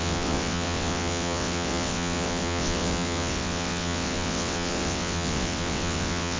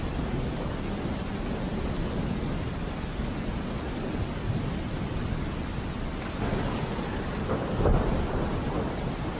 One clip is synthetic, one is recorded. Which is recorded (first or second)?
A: second